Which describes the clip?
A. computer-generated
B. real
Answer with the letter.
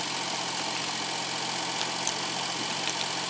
B